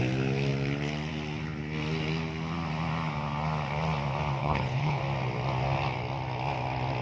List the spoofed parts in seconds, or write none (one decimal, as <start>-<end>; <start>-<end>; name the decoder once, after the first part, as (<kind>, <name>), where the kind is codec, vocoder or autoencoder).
4.4-5.0 (codec, HILCodec)